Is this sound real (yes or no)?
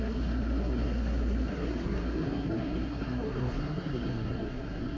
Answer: no